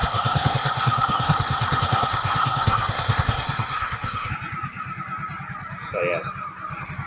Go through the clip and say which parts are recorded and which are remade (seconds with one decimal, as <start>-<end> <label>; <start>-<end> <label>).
0.0-4.3 remade; 4.3-7.1 recorded